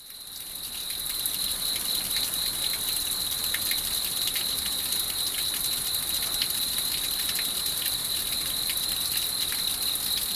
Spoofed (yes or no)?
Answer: no